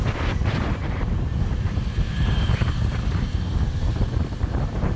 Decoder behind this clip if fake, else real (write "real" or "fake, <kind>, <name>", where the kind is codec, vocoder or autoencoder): fake, vocoder, BigVGAN v2